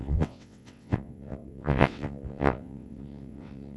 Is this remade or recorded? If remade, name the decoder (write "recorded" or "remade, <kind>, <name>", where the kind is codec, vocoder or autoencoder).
remade, vocoder, WaveNeXt